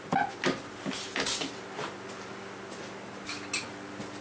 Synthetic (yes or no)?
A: no